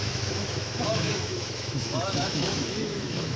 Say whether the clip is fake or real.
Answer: fake